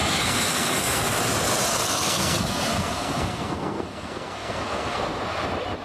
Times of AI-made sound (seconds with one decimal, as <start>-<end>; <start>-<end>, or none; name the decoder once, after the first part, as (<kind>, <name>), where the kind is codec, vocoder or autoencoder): 0.0-1.2 (codec, SNAC); 1.7-5.2